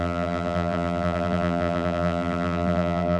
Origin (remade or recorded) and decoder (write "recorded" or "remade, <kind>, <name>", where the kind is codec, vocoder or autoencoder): remade, vocoder, BigVGAN v2